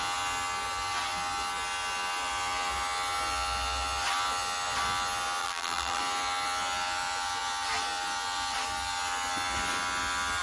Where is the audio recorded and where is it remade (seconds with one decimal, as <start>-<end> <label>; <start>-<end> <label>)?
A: 0.0-5.4 recorded; 5.4-6.0 remade; 6.0-10.4 recorded